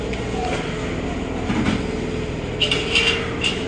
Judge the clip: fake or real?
real